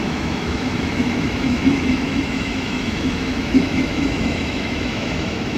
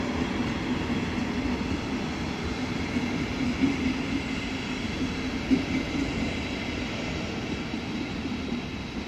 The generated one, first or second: first